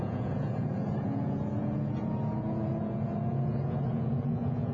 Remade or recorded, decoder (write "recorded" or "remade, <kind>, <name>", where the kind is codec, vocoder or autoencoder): remade, vocoder, Vocos